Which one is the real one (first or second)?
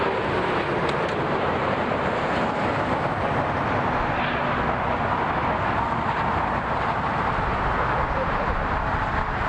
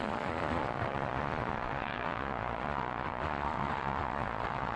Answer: first